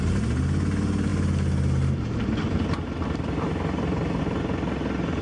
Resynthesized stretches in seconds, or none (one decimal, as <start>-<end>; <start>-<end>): none